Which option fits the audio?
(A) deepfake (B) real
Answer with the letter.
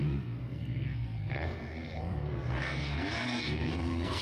A